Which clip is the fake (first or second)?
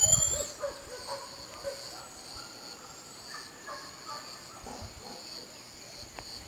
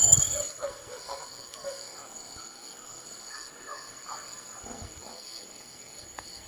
second